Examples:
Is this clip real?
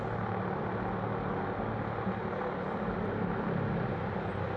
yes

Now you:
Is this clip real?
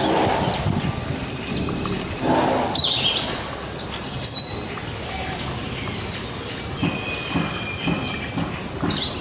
yes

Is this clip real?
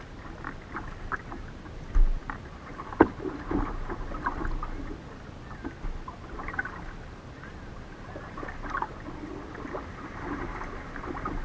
yes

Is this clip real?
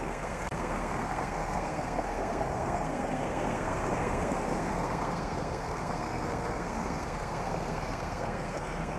no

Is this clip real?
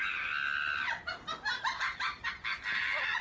yes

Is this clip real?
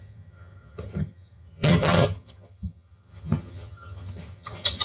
no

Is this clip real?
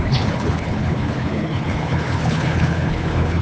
no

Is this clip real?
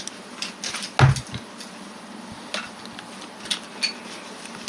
yes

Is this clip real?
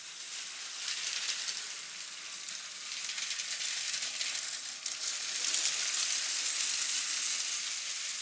yes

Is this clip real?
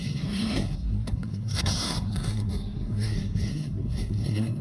no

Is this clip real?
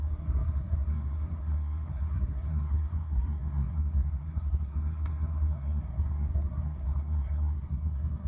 no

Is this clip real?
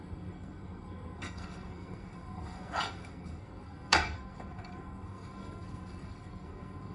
no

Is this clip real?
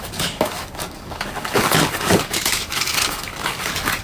no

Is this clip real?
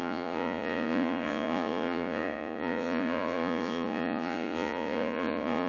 no